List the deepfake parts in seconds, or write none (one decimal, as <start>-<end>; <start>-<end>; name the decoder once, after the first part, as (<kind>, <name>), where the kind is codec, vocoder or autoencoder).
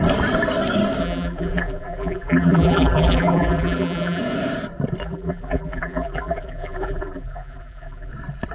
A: 1.0-4.2 (vocoder, BigVGAN v2); 5.0-8.1